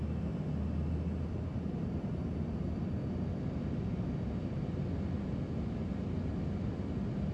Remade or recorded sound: recorded